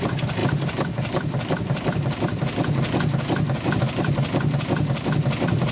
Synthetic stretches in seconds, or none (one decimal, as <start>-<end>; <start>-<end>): 0.0-0.4; 3.8-5.7